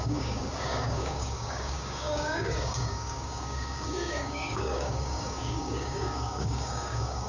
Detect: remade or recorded remade